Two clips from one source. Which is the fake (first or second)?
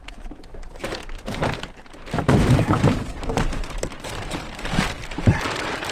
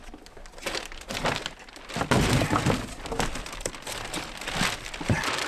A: first